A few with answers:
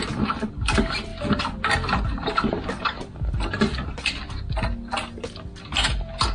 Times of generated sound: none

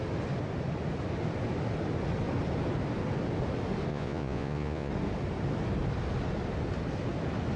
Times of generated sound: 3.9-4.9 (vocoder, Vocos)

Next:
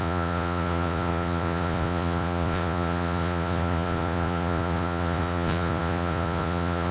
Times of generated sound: 0.0-6.9 (vocoder, Vocos)

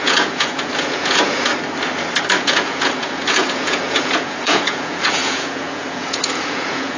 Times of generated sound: 0.0-1.5 (vocoder, Vocos); 2.4-7.0